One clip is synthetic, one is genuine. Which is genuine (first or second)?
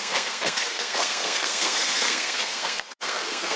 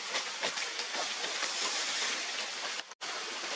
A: second